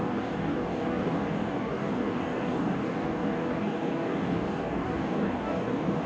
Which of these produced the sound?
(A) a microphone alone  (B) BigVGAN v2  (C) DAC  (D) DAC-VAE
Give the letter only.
C